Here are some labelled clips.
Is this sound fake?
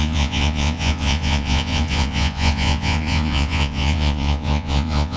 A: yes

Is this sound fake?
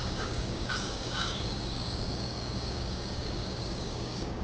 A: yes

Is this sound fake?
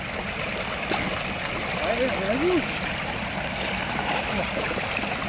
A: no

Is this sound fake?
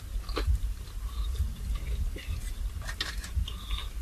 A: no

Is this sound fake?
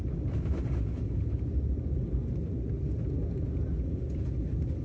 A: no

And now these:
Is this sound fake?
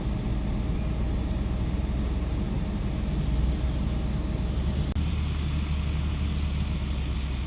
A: no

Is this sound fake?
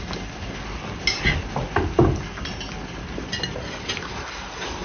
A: no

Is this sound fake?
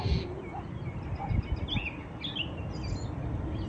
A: no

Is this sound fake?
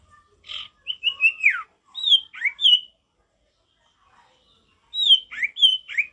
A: no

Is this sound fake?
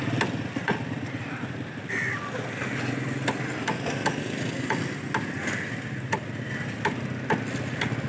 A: no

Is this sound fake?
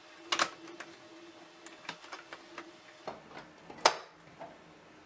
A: no